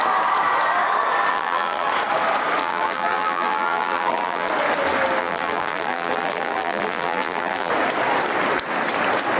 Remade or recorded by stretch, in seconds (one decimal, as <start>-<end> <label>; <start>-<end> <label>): 0.0-1.3 recorded; 1.3-1.9 remade; 1.9-2.6 recorded; 2.6-4.5 remade; 4.5-5.2 recorded; 5.2-7.7 remade; 7.7-9.4 recorded